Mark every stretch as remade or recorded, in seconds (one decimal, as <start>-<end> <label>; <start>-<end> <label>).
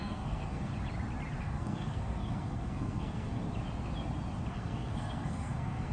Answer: 0.0-0.7 remade; 0.7-1.4 recorded; 1.4-3.4 remade; 3.4-4.5 recorded; 4.5-5.9 remade